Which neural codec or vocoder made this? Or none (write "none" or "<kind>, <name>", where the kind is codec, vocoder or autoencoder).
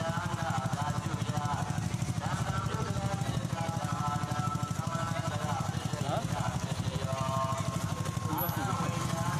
none